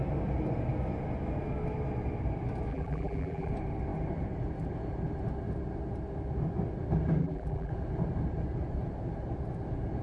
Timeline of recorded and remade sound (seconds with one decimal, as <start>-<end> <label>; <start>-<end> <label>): 0.0-2.7 recorded; 2.7-3.5 remade; 3.5-7.2 recorded; 7.2-7.7 remade; 7.7-10.0 recorded